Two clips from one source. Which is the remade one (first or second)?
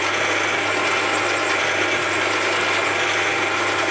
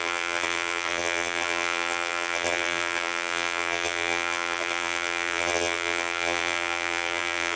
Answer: second